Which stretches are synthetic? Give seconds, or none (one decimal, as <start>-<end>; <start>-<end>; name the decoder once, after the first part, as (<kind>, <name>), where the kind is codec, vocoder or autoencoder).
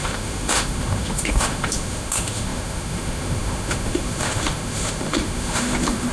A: 0.0-6.1 (autoencoder, DAC-VAE)